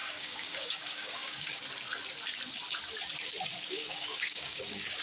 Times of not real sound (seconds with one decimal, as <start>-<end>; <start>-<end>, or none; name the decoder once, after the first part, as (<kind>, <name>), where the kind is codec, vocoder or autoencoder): 0.0-1.6 (codec, DAC); 3.6-5.0